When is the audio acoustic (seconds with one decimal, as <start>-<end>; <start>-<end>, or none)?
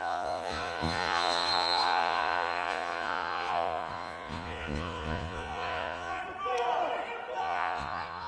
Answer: 6.2-7.4